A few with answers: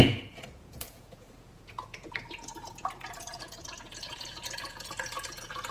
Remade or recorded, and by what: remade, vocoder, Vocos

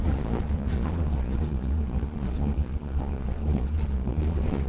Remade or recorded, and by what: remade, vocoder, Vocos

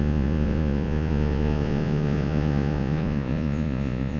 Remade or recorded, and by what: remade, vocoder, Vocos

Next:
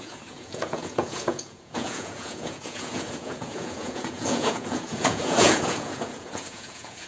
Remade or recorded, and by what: remade, vocoder, Vocos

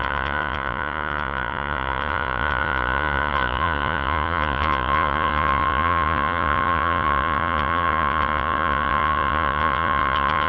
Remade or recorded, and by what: remade, vocoder, Vocos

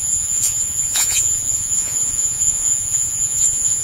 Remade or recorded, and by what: remade, vocoder, Vocos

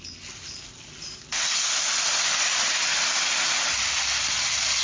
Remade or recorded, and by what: recorded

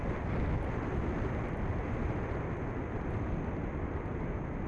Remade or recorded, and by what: recorded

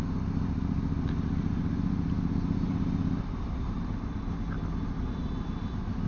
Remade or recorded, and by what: recorded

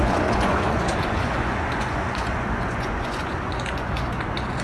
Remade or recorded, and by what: remade, vocoder, Vocos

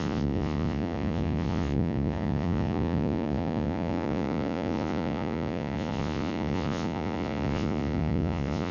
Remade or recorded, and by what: remade, vocoder, Vocos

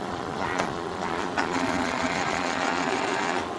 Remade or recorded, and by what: remade, vocoder, Vocos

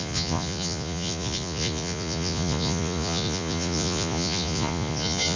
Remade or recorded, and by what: remade, vocoder, Vocos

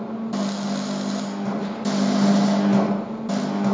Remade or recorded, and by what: recorded